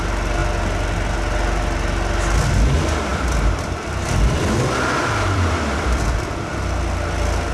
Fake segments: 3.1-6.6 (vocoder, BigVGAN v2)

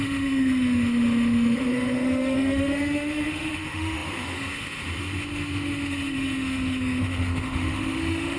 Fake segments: 0.0-8.4 (autoencoder, DAC-VAE)

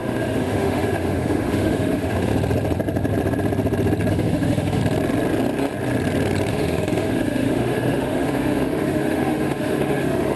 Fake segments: 0.0-2.3 (autoencoder, DAC-VAE); 4.1-4.8; 6.5-10.4

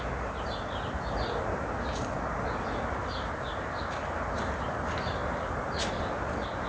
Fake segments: none

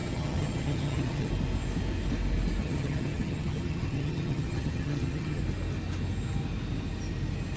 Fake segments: 0.0-1.3 (vocoder, HiFi-GAN); 2.6-5.4

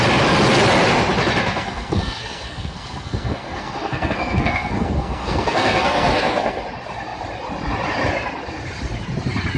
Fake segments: 1.4-6.6 (codec, SNAC)

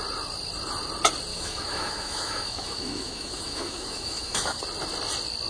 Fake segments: 1.3-4.6 (autoencoder, DAC-VAE)

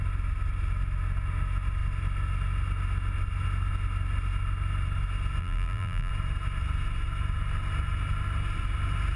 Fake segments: 5.4-6.1 (vocoder, BigVGAN v2)